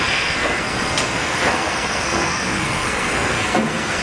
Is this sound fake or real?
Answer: fake